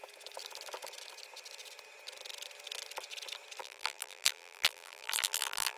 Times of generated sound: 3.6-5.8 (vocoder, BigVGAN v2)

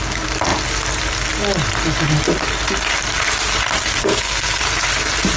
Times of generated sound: 4.0-4.6 (codec, SNAC)

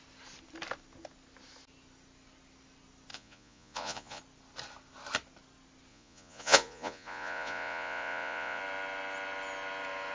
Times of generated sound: 3.1-4.2 (vocoder, Vocos); 5.9-8.6

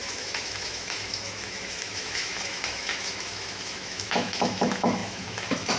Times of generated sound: 0.0-5.8 (autoencoder, DAC-VAE)

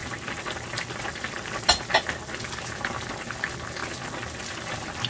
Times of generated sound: none

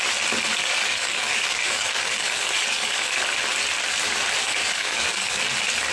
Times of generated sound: 0.6-3.1 (codec, DAC); 4.6-5.4

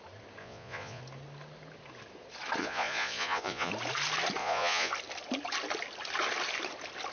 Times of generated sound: 0.4-1.0 (vocoder, Vocos); 2.6-3.7; 4.4-4.9

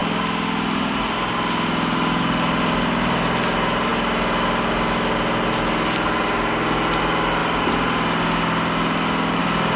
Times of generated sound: none